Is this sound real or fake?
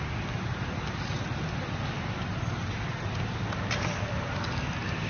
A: real